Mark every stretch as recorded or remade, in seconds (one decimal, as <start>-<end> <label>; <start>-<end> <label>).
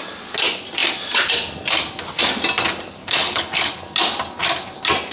0.0-3.0 recorded; 3.0-3.7 remade; 3.7-5.1 recorded